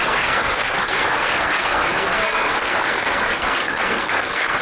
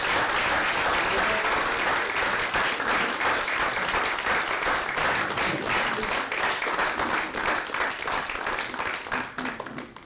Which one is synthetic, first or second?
first